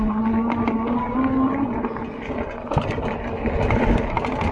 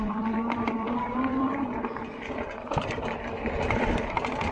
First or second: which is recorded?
first